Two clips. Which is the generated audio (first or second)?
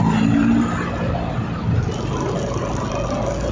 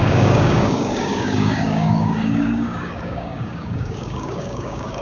second